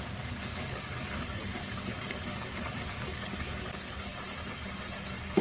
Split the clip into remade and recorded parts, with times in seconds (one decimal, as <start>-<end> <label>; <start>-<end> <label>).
0.0-4.1 remade; 4.1-5.4 recorded